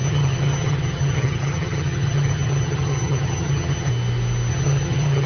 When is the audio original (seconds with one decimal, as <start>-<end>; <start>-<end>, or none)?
3.9-4.5